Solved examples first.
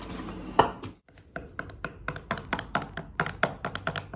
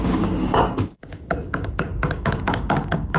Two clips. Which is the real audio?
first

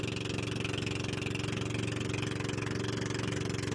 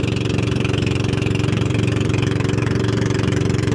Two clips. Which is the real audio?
first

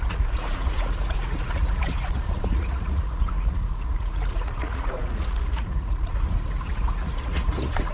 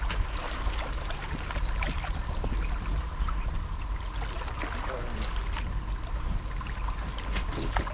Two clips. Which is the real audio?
second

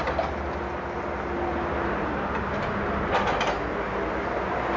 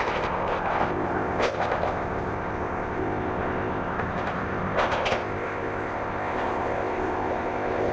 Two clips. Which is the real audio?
first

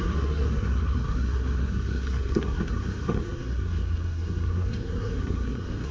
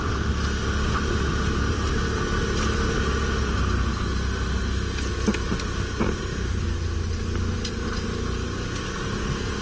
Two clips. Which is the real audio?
second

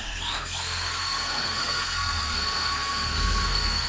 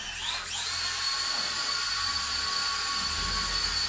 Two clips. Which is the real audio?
second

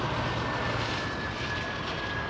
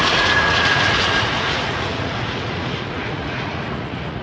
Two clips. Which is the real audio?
first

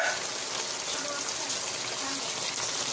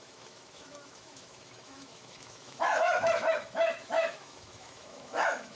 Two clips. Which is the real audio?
first